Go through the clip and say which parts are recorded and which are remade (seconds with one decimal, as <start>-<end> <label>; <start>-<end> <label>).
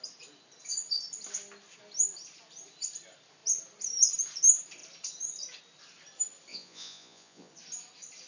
0.0-6.5 recorded; 6.5-7.5 remade; 7.5-8.3 recorded